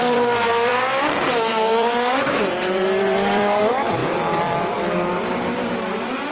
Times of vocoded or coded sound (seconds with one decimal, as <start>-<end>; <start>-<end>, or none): 0.0-6.3